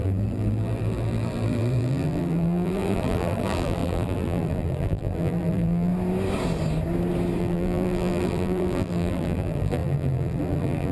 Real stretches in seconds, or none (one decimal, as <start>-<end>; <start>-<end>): 5.9-7.4